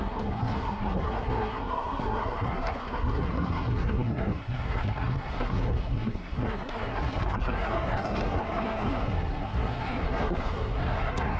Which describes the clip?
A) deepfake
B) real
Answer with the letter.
A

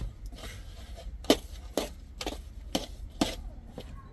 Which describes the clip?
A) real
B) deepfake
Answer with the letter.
A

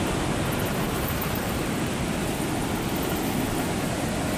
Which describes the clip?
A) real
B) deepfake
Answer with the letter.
A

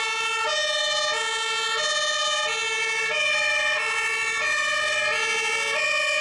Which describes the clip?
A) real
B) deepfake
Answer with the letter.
A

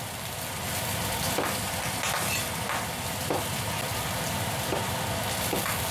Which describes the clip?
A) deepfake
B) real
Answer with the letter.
B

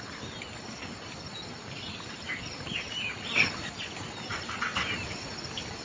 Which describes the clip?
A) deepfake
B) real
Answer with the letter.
B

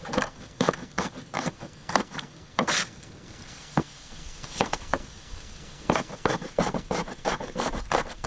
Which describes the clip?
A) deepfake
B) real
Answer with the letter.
A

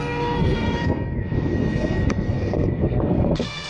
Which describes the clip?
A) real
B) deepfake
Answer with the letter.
B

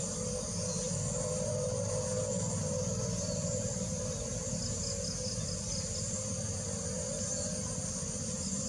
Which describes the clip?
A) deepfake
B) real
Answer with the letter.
B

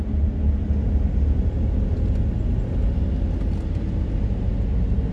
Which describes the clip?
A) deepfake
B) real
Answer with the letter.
B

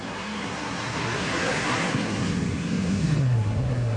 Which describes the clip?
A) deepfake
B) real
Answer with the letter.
A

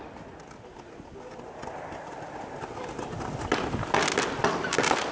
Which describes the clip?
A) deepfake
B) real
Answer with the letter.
B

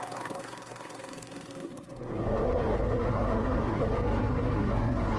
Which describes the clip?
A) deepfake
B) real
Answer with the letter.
A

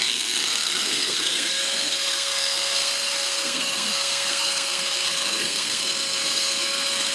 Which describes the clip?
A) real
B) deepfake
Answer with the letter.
B